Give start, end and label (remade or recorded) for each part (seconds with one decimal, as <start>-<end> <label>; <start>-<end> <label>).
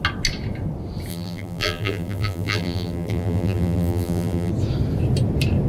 0.0-1.1 recorded; 1.1-4.5 remade; 4.5-5.7 recorded